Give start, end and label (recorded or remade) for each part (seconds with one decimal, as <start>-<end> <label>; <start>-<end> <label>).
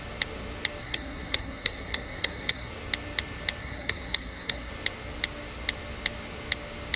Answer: 0.0-0.8 recorded; 0.8-2.7 remade; 2.7-3.6 recorded; 3.6-4.7 remade; 4.7-7.0 recorded